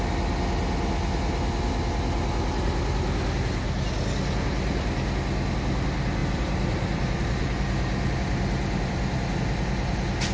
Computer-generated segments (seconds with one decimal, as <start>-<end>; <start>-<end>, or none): 6.2-9.4